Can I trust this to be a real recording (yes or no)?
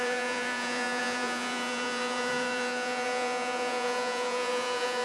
no